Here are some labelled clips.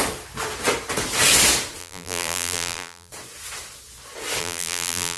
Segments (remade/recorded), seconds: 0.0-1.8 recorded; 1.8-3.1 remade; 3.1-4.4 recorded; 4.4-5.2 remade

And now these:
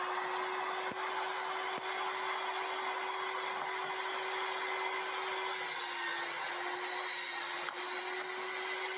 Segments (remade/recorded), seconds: 0.0-9.0 recorded

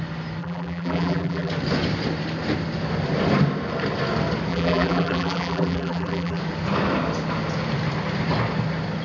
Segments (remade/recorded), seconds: 0.0-0.4 recorded; 0.4-1.5 remade; 1.5-4.5 recorded; 4.5-6.4 remade; 6.4-9.0 recorded

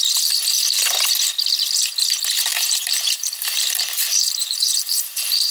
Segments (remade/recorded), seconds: 0.0-2.5 recorded; 2.5-5.5 remade

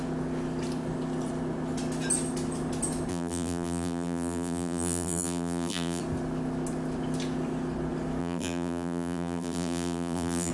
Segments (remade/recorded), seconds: 0.0-3.1 recorded; 3.1-6.0 remade; 6.0-8.2 recorded; 8.2-10.5 remade

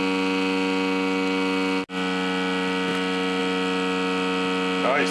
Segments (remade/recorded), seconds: 0.0-5.1 recorded